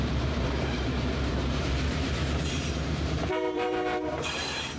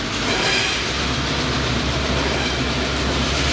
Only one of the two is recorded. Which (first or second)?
second